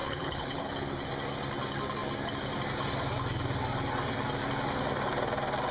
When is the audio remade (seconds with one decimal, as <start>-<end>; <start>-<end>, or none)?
0.0-0.7